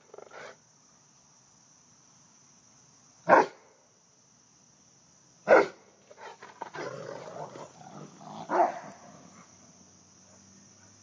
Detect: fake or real real